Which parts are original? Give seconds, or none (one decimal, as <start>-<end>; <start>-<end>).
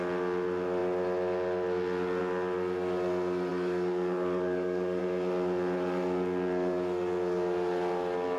0.0-3.5; 5.0-8.4